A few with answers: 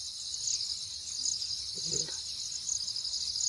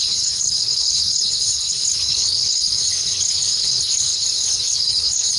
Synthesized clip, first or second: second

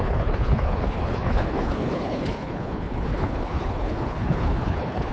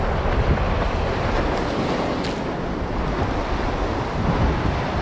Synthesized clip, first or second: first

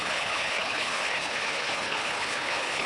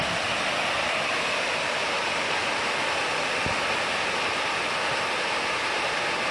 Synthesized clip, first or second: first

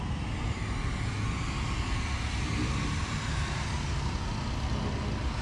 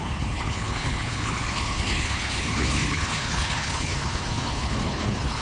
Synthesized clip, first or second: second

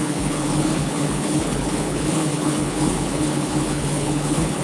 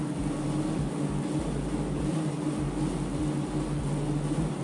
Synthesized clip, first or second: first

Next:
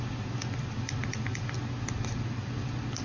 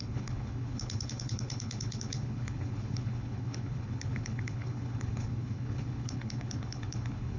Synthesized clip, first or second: second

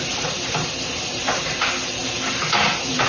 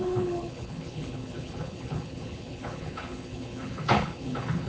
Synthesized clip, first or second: second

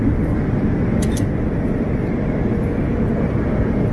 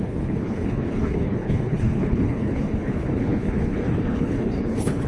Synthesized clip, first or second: second